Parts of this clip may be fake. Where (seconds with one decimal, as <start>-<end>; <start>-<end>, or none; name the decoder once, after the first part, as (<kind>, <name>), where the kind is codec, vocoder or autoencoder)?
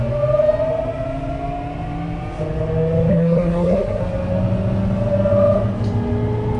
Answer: 3.1-4.0 (codec, SNAC)